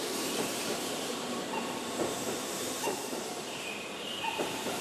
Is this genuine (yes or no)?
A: no